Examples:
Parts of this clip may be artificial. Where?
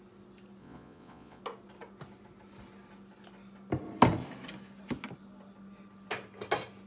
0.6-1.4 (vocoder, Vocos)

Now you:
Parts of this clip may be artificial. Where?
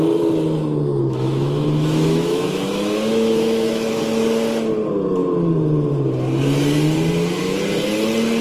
1.0-3.9 (autoencoder, DAC-VAE)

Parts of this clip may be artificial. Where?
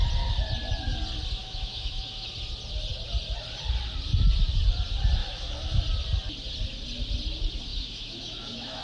1.4-2.3 (autoencoder, DAC-VAE); 5.2-5.8; 7.7-8.8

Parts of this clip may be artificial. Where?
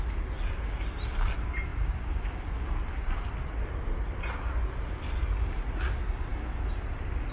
none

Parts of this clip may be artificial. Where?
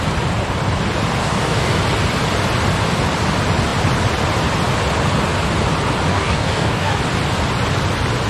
1.2-1.8 (codec, DAC); 6.1-7.0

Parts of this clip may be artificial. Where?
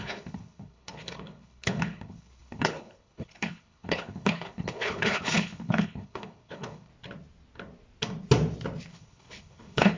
0.0-6.9 (codec, HILCodec); 8.9-10.0